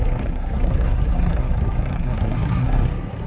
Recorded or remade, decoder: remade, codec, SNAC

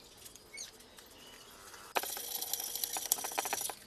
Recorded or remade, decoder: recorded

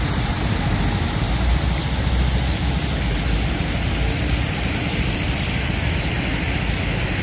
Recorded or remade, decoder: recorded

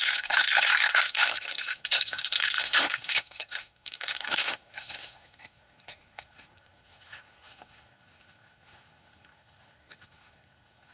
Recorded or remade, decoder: remade, codec, SNAC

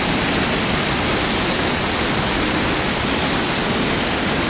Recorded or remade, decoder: recorded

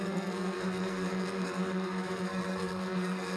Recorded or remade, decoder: remade, codec, SNAC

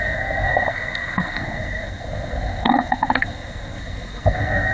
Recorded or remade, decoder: remade, codec, SNAC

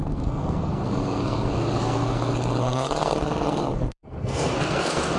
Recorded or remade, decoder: remade, codec, SNAC